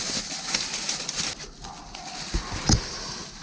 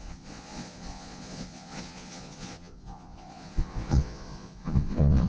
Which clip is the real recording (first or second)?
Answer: first